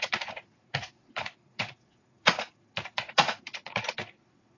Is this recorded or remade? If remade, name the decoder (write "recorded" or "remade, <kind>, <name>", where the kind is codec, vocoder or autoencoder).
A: remade, vocoder, Vocos